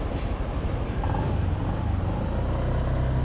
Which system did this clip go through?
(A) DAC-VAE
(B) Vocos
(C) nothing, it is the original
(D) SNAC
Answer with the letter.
C